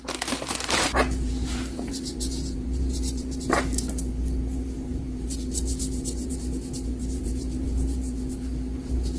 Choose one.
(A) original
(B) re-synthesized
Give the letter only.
B